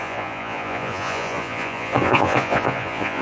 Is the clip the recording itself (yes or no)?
no